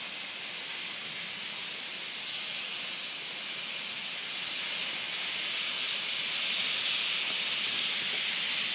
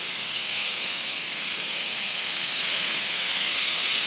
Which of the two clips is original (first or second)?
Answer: first